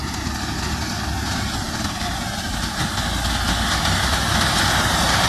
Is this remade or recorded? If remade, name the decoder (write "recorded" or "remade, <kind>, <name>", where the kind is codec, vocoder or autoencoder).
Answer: recorded